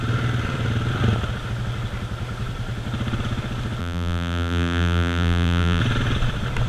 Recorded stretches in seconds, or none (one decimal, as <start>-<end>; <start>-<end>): 0.0-3.8; 5.8-6.7